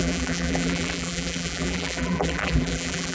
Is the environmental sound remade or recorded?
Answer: remade